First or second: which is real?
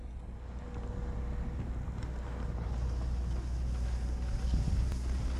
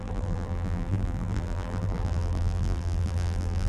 first